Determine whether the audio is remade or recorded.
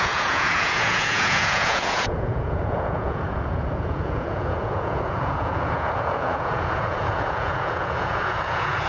remade